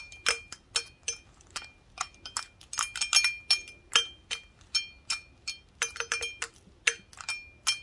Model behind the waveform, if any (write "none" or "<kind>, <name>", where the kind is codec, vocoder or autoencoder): none